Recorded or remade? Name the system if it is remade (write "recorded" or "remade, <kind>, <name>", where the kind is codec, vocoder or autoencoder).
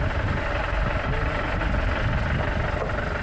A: recorded